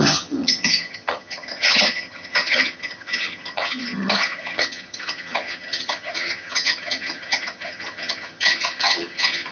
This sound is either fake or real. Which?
fake